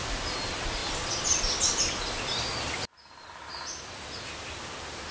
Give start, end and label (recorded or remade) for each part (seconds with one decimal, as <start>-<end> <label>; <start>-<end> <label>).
0.0-5.1 recorded